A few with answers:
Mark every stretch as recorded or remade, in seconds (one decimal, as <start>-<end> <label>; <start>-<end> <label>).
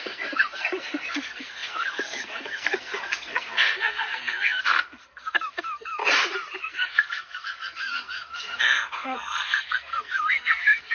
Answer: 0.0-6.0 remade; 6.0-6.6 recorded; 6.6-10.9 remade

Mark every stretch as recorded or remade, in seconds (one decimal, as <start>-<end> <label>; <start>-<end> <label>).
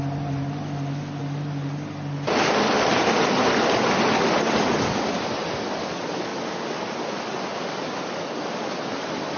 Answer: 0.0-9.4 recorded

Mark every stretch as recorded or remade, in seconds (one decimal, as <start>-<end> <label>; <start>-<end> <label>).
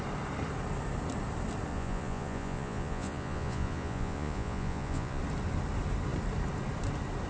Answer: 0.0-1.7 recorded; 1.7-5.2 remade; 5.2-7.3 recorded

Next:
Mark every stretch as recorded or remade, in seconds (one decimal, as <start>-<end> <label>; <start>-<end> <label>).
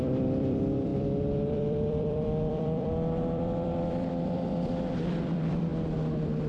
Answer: 0.0-5.7 remade; 5.7-6.5 recorded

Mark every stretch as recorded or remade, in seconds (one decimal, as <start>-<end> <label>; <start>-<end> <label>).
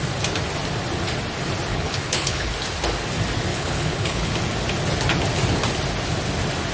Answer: 0.0-1.7 recorded; 1.7-2.5 remade; 2.5-3.5 recorded; 3.5-4.3 remade; 4.3-6.7 recorded